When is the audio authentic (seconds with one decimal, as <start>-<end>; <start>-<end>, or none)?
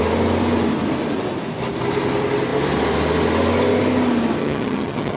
0.0-4.4